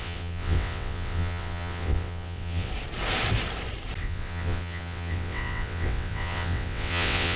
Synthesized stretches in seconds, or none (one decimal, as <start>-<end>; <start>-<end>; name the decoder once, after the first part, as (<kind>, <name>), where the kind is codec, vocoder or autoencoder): 0.0-2.7 (vocoder, WaveNeXt); 4.0-7.4